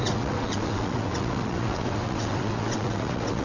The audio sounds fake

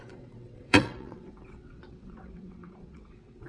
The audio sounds fake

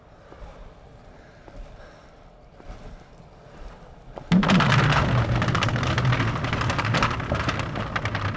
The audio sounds real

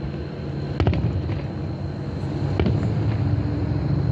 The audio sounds real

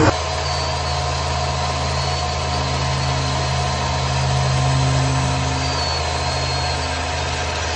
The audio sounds real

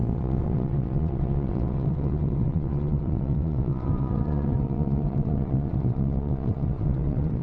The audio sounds fake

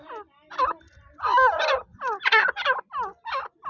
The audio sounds real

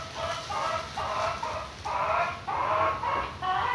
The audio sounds real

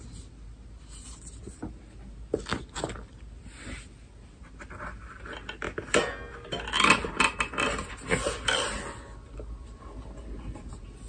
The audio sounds real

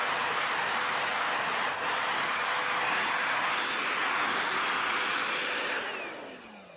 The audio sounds real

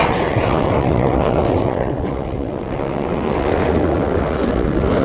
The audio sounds fake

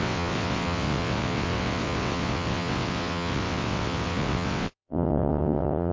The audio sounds fake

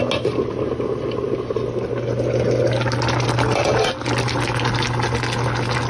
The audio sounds real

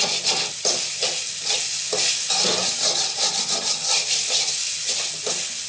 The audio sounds real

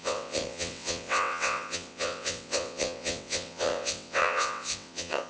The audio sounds fake